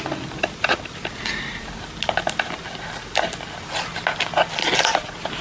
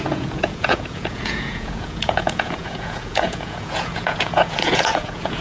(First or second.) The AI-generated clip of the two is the second